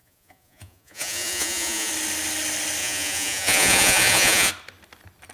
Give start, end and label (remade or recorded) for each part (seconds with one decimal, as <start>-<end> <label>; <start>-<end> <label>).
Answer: 0.0-1.9 remade; 1.9-2.8 recorded; 2.8-4.5 remade; 4.5-5.3 recorded